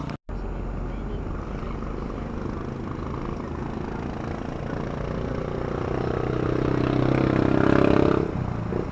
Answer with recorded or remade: recorded